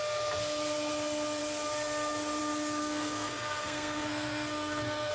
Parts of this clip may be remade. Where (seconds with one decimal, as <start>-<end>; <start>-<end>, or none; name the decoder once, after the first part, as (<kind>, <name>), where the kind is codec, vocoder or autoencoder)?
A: 2.8-5.1 (codec, SNAC)